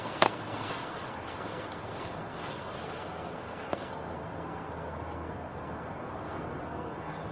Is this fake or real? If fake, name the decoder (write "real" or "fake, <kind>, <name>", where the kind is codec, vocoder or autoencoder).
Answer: fake, codec, SNAC